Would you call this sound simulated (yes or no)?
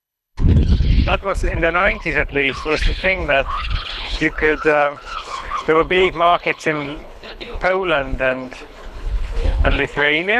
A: yes